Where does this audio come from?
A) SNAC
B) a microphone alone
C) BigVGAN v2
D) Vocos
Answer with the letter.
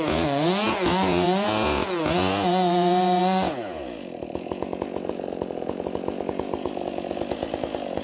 D